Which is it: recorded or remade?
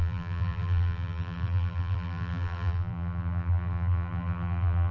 remade